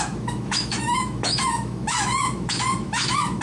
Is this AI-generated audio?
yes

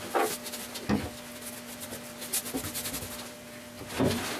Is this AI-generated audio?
no